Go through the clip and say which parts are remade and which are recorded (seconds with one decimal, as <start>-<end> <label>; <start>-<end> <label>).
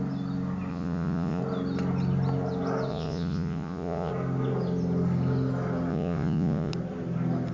0.0-0.7 recorded; 0.7-1.4 remade; 1.4-2.9 recorded; 2.9-4.1 remade; 4.1-5.9 recorded; 5.9-6.7 remade; 6.7-7.5 recorded